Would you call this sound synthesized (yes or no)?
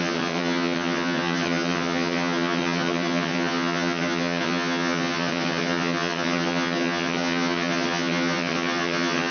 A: yes